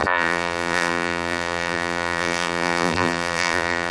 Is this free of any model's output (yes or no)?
no